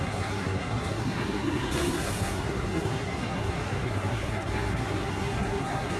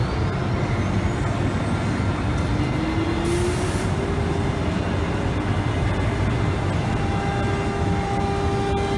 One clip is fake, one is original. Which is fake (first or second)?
first